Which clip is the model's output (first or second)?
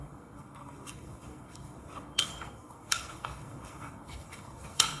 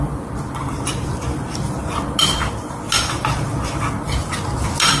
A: first